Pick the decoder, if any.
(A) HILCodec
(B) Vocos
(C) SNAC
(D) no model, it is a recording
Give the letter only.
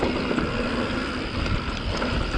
D